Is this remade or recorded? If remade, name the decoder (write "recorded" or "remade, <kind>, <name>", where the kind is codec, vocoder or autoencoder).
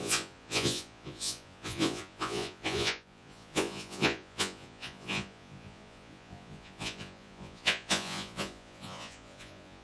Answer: remade, vocoder, Vocos